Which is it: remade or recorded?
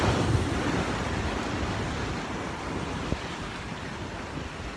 recorded